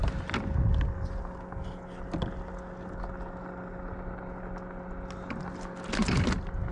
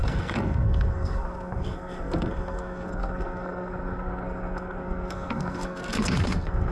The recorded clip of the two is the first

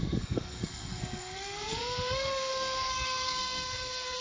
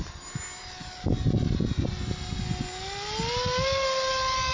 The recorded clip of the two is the second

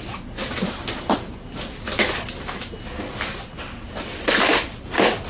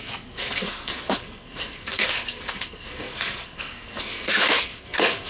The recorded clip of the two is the first